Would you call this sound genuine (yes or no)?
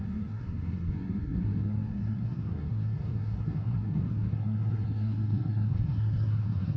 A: no